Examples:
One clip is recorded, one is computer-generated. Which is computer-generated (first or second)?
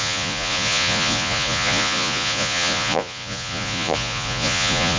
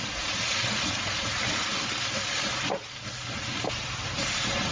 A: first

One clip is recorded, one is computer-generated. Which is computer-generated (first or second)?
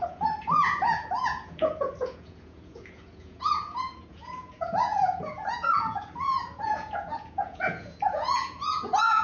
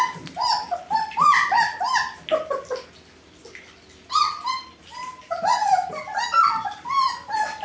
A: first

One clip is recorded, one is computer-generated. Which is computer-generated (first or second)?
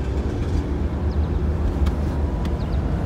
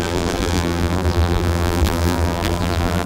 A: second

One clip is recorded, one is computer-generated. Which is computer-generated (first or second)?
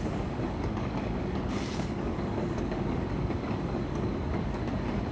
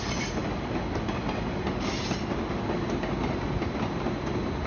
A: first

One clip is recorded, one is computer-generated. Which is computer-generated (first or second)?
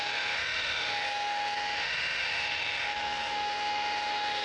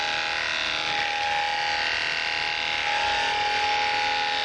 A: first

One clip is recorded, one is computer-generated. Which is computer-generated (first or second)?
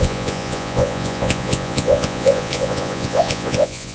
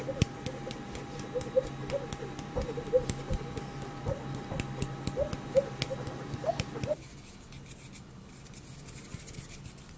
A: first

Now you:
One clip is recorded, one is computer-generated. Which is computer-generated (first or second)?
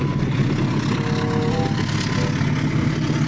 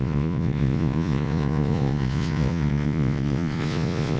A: second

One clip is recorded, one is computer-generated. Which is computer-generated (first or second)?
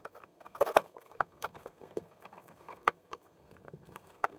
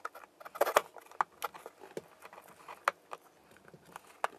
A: first